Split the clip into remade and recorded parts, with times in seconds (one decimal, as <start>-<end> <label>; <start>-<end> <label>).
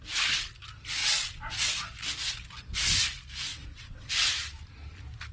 0.0-1.0 recorded; 1.0-1.5 remade; 1.5-3.5 recorded; 3.5-4.3 remade; 4.3-5.3 recorded